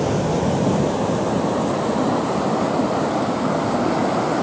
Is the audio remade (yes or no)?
no